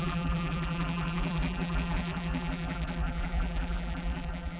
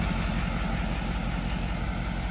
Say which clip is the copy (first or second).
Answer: first